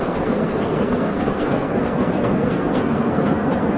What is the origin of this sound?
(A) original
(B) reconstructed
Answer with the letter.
B